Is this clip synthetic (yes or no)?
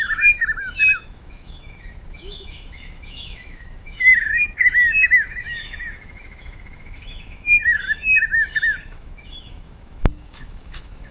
yes